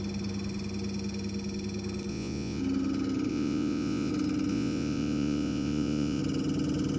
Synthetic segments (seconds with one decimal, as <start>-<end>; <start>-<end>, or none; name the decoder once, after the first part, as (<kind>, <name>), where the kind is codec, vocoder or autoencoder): 2.1-2.6 (vocoder, Vocos); 3.3-4.1; 4.5-6.2